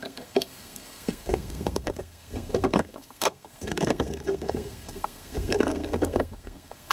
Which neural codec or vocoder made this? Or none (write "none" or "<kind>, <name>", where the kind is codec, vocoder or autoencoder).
codec, SNAC